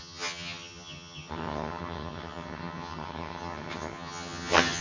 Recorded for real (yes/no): no